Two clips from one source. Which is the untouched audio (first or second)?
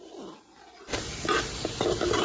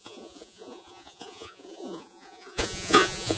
first